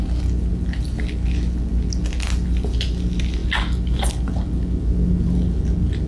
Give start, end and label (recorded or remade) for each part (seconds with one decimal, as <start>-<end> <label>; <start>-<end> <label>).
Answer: 0.0-6.1 recorded